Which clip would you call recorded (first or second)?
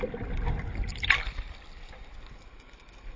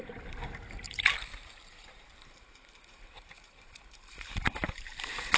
first